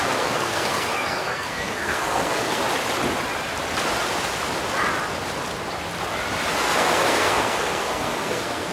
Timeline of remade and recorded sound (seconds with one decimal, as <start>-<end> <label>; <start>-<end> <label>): 0.0-2.6 remade; 2.6-6.5 recorded; 6.5-8.7 remade